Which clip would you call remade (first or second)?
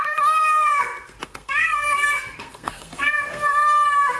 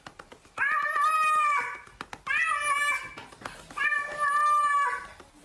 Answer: first